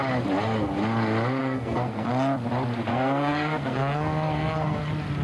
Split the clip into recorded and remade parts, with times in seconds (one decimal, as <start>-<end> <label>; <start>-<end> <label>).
0.0-1.4 recorded; 1.4-2.1 remade; 2.1-2.9 recorded; 2.9-4.8 remade; 4.8-5.2 recorded